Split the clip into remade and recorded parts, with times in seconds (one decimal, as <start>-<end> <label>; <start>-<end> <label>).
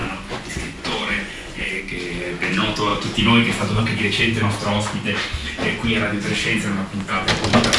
0.0-1.8 remade; 1.8-7.8 recorded